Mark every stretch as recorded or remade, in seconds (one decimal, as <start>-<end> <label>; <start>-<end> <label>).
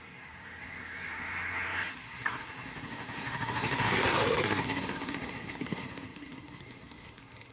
0.0-7.5 remade